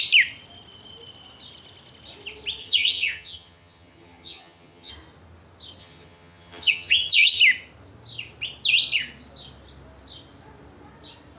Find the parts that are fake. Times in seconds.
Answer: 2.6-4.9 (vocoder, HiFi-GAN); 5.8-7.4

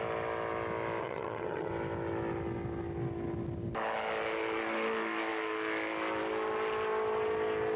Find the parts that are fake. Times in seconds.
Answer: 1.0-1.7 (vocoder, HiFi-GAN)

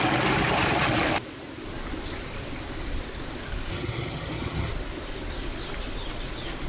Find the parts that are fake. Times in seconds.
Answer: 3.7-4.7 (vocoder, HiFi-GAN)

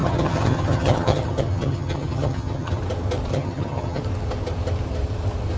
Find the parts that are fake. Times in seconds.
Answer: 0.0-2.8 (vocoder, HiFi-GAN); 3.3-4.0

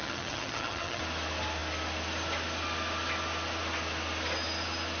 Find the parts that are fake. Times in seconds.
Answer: 0.0-1.0 (vocoder, HiFi-GAN)

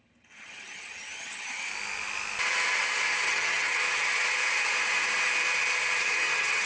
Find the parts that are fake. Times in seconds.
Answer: 0.0-1.7 (vocoder, HiFi-GAN); 3.3-3.8; 6.0-6.7